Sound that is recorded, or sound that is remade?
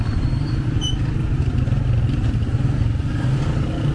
recorded